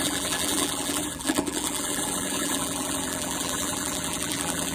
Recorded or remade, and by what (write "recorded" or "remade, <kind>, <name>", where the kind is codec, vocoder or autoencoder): remade, vocoder, BigVGAN v2